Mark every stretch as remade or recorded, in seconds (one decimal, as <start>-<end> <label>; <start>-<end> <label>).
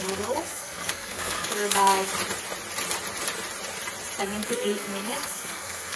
0.0-2.1 remade; 2.1-4.2 recorded; 4.2-6.0 remade